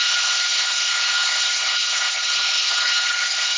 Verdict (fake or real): fake